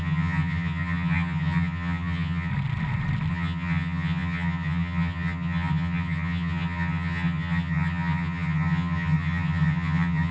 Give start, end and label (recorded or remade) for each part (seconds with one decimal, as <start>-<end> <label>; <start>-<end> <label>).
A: 0.0-2.5 remade; 2.5-3.3 recorded; 3.3-10.3 remade